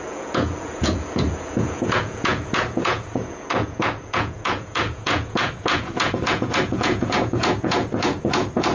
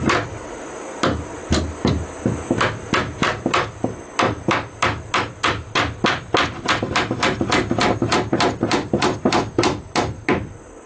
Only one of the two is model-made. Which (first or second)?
first